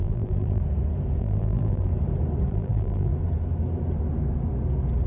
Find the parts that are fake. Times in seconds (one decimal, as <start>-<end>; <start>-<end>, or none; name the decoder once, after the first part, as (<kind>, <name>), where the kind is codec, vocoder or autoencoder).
0.0-0.6 (vocoder, BigVGAN v2); 1.2-1.9; 2.5-3.1